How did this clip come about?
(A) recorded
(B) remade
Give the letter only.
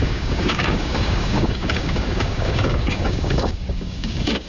B